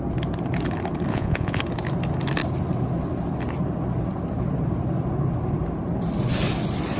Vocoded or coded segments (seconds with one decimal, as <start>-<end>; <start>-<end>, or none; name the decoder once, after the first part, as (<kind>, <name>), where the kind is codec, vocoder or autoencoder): 1.1-1.6 (vocoder, Vocos)